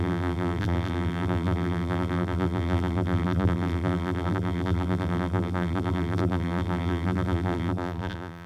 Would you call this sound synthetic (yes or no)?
yes